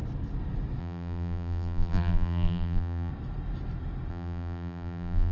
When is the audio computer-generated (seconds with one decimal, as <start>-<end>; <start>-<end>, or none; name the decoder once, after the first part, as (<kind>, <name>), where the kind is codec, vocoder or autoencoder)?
0.8-3.1 (vocoder, BigVGAN v2); 4.1-5.3